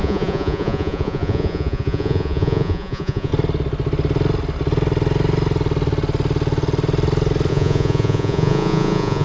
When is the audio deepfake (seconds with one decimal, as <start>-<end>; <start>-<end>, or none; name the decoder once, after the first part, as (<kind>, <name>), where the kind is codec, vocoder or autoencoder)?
0.0-3.3 (vocoder, Vocos); 7.5-9.2